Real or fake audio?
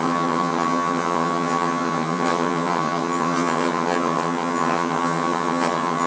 fake